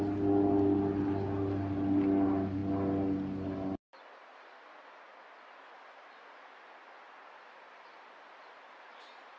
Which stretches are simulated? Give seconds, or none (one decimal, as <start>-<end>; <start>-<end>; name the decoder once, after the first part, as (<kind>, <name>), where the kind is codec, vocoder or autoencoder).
none